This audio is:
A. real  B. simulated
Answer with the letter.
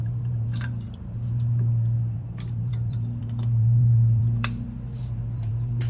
B